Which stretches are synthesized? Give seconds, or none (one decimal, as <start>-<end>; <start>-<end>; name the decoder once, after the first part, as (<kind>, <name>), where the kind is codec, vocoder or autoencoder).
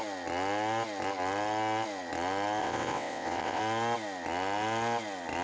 2.6-3.6 (vocoder, WaveNeXt)